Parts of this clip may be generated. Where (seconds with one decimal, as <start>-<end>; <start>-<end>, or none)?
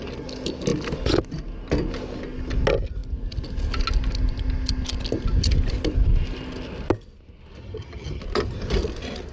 7.6-8.2